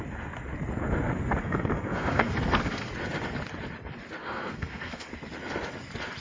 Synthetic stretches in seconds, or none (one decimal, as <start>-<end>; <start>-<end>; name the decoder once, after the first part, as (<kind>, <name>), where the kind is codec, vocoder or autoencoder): 1.4-2.9 (codec, SNAC); 4.2-5.1